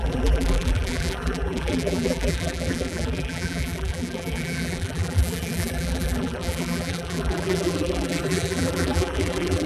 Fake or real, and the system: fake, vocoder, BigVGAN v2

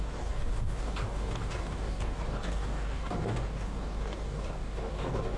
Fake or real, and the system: fake, codec, DAC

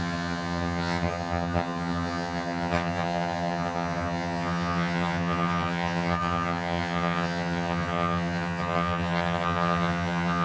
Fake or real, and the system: fake, vocoder, HiFi-GAN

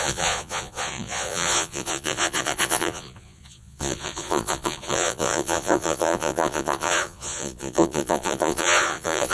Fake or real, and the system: fake, vocoder, Vocos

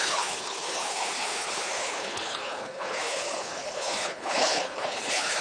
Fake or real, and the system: fake, codec, HILCodec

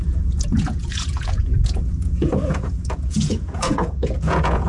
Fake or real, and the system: fake, vocoder, Vocos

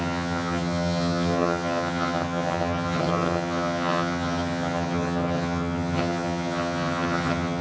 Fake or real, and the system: fake, vocoder, HiFi-GAN